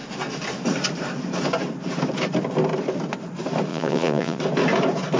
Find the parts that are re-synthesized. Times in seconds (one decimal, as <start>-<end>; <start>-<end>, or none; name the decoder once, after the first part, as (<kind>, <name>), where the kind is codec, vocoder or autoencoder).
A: 3.7-4.4 (vocoder, Vocos)